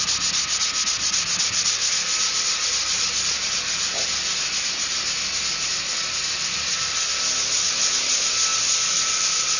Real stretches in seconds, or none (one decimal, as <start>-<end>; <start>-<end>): 0.0-9.6